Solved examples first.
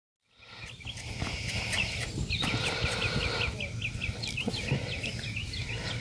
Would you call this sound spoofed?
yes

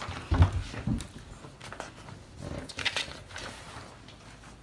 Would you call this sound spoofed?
no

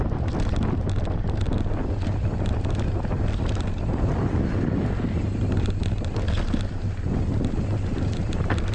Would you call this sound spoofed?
no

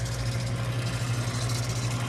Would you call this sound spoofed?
no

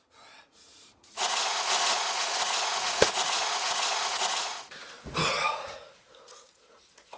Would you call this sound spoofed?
yes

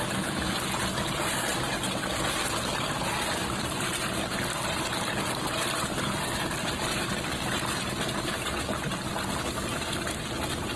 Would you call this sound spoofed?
no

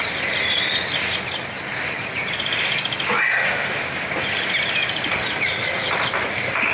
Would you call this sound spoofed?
no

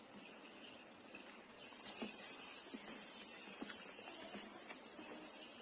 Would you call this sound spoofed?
no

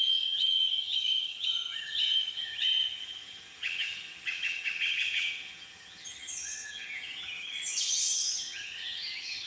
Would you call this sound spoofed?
yes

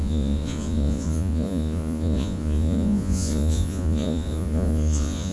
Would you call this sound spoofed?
yes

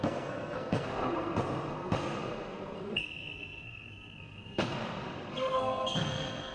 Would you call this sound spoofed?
yes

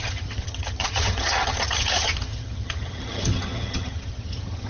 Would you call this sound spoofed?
yes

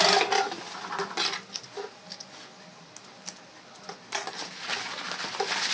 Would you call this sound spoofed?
no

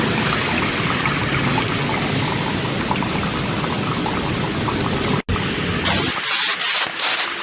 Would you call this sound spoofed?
no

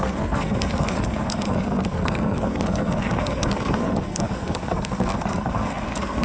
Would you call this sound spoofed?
yes